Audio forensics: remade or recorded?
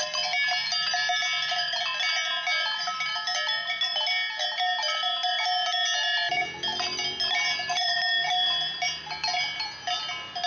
recorded